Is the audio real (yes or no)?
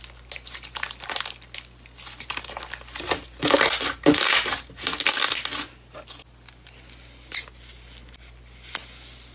yes